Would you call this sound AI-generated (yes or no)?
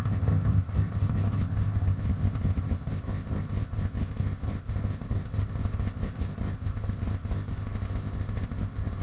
yes